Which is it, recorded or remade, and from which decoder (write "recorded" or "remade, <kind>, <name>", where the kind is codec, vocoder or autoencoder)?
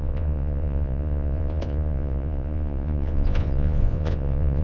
remade, vocoder, Vocos